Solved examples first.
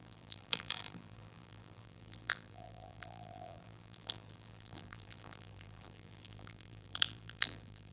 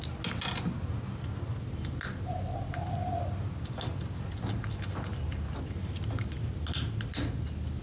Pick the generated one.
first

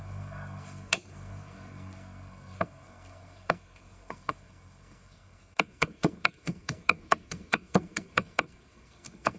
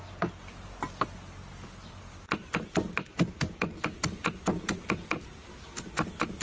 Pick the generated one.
first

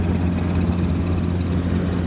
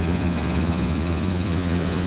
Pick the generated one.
second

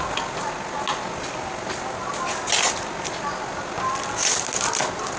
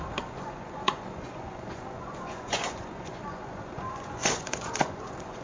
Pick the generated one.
second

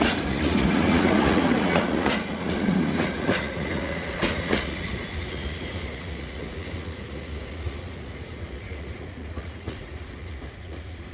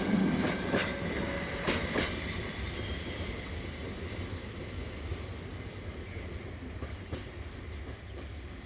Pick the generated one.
first